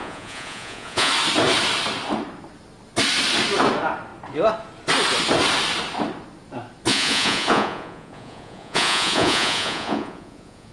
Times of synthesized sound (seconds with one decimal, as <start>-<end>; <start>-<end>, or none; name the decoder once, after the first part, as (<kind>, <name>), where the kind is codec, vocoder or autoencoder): 0.0-1.1 (vocoder, Vocos); 6.9-10.7